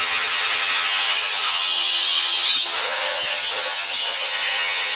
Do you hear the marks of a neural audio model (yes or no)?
yes